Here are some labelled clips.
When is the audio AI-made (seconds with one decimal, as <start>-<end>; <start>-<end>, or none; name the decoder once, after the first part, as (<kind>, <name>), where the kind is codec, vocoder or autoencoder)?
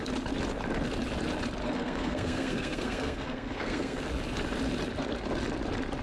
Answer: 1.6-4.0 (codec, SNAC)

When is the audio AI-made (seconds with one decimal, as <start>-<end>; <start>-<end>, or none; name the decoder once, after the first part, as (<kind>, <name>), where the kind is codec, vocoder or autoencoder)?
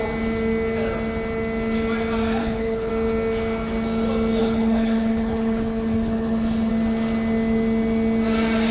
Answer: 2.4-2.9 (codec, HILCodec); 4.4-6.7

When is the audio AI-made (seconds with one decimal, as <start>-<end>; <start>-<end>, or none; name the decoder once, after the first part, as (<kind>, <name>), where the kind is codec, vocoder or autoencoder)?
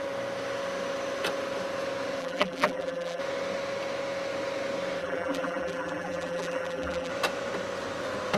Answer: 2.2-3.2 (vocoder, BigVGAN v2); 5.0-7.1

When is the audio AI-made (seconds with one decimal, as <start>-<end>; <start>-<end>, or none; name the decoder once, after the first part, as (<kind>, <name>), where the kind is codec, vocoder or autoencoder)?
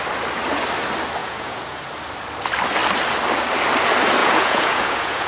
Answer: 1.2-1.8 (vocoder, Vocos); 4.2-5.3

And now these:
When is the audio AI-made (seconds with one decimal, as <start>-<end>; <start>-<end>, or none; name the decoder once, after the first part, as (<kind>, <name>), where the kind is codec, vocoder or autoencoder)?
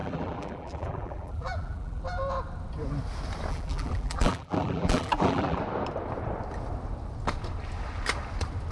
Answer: 0.0-2.0 (vocoder, BigVGAN v2); 3.5-5.6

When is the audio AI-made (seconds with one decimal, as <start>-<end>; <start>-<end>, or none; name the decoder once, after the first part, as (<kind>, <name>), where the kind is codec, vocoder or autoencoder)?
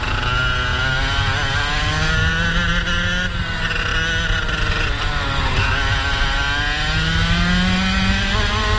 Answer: none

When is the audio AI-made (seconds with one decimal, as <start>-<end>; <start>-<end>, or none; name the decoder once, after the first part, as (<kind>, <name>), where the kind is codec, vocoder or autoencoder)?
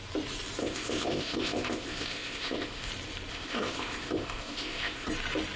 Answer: 0.6-2.9 (codec, ZipCodec); 3.3-5.1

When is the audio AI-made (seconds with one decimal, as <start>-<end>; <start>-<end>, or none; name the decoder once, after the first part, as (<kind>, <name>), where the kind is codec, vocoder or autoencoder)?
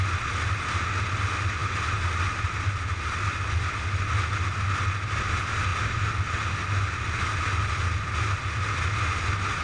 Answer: none